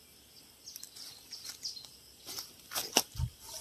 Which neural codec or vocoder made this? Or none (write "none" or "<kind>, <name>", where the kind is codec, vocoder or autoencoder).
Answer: none